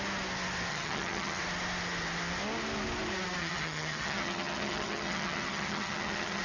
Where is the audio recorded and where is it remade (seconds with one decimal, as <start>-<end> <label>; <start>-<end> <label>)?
0.0-0.7 recorded; 0.7-1.4 remade; 1.4-3.4 recorded; 3.4-6.4 remade